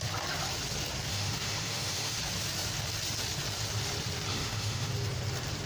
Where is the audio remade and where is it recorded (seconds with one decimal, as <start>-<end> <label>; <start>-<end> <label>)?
0.0-1.1 recorded; 1.1-2.2 remade; 2.2-4.3 recorded; 4.3-4.9 remade; 4.9-5.7 recorded